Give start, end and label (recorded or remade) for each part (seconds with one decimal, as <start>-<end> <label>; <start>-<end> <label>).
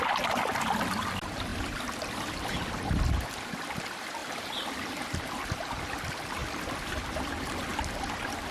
0.0-4.2 recorded; 4.2-4.7 remade; 4.7-7.7 recorded; 7.7-8.5 remade